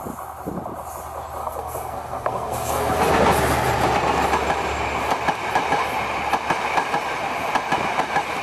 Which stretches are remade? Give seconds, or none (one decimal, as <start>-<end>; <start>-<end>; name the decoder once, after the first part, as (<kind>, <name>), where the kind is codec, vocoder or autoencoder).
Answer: 1.4-3.0 (codec, SNAC)